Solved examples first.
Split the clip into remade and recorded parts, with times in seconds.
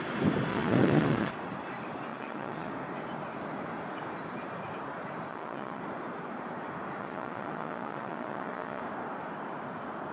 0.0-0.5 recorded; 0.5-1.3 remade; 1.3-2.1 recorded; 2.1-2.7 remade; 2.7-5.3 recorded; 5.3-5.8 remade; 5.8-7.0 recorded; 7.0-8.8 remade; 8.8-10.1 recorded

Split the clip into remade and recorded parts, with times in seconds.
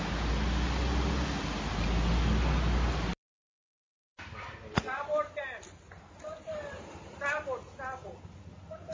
0.0-8.9 recorded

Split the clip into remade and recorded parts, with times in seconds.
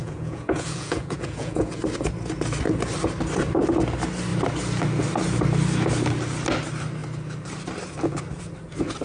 0.0-1.8 remade; 1.8-9.0 recorded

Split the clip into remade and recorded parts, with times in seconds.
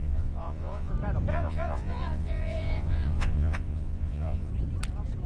0.0-0.9 remade; 0.9-1.3 recorded; 1.3-4.5 remade; 4.5-5.3 recorded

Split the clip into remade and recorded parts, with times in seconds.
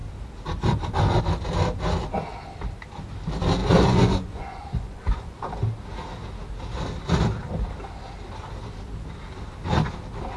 0.0-3.6 recorded; 3.6-5.4 remade; 5.4-10.4 recorded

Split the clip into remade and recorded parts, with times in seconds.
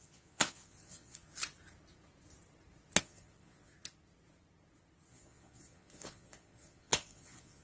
0.0-1.3 remade; 1.3-3.0 recorded; 3.0-3.7 remade; 3.7-5.1 recorded; 5.1-7.6 remade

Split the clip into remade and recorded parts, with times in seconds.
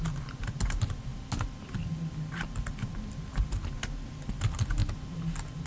0.0-5.7 recorded